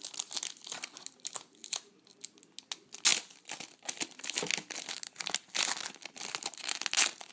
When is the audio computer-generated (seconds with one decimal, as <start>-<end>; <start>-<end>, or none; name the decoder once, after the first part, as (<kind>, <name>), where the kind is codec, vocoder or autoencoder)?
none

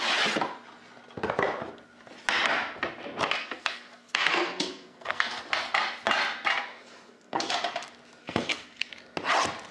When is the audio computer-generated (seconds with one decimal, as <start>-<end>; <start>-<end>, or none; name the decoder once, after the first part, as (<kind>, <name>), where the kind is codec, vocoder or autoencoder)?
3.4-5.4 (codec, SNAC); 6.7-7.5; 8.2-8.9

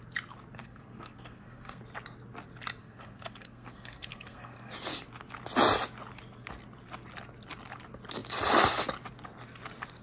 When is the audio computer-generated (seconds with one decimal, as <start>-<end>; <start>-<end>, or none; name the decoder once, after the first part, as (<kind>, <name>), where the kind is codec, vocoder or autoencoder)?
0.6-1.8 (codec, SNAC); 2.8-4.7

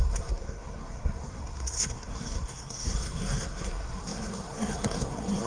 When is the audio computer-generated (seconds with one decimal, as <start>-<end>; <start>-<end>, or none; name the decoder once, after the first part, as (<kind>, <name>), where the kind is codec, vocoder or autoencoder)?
0.0-5.5 (codec, SNAC)

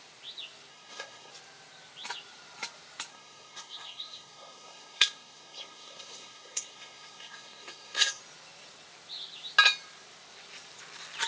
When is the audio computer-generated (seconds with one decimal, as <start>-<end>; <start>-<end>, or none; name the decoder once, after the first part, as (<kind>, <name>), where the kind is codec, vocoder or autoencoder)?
0.7-1.3 (codec, SNAC); 3.1-8.2